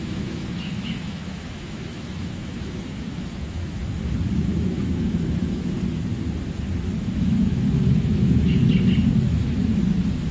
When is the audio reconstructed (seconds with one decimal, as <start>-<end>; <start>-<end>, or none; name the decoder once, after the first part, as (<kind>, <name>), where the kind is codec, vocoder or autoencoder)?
0.0-3.8 (autoencoder, DAC-VAE); 4.4-5.8; 7.1-8.6